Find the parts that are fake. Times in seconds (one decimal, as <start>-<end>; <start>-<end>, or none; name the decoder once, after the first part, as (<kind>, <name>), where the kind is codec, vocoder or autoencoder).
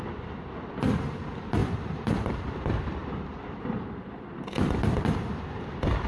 1.6-2.6 (vocoder, BigVGAN v2); 3.0-3.6